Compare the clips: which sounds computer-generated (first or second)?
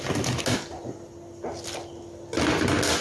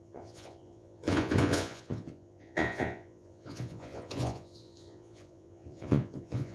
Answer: second